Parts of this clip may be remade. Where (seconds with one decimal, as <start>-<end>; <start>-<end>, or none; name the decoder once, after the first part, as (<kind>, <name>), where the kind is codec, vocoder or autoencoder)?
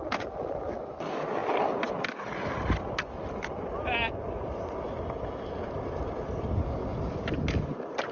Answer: none